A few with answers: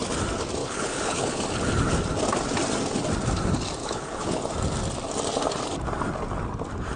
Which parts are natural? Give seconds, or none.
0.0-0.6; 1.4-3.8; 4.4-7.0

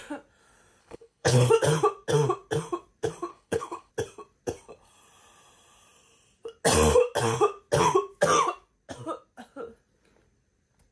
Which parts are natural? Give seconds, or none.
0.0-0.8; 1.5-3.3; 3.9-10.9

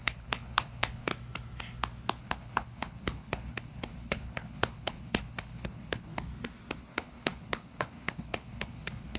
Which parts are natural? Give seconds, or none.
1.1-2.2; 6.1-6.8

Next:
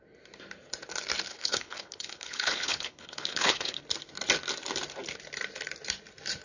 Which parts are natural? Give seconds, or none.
0.0-1.3; 3.8-6.4

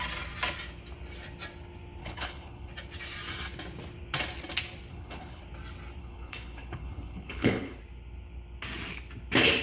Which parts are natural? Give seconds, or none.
0.0-2.0; 2.7-4.9; 5.4-6.0; 7.8-9.6

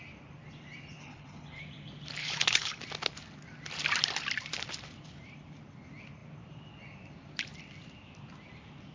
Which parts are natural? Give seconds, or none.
0.0-1.0; 1.6-2.2; 2.8-8.9

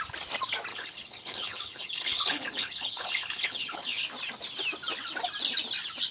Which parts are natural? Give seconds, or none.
0.0-0.7; 4.0-6.1